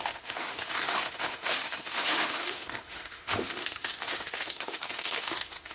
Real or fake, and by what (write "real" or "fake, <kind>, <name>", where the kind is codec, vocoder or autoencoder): fake, autoencoder, DAC-VAE